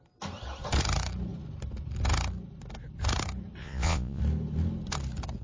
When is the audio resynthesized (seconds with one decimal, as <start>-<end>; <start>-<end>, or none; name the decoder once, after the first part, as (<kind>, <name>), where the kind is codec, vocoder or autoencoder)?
3.6-4.2 (vocoder, Vocos)